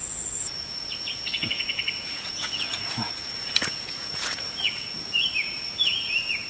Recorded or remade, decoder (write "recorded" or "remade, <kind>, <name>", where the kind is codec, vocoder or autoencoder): remade, vocoder, Vocos